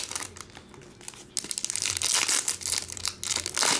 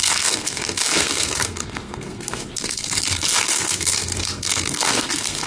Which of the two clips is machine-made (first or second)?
second